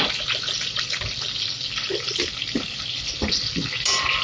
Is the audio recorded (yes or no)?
yes